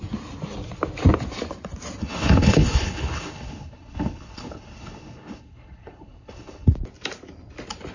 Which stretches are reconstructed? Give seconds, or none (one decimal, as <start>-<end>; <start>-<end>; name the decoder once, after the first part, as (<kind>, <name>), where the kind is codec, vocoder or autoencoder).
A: 2.0-6.7 (codec, HILCodec)